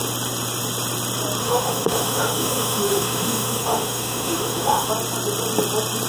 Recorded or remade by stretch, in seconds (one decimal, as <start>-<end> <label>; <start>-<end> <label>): 0.0-1.4 recorded; 1.4-4.9 remade; 4.9-6.1 recorded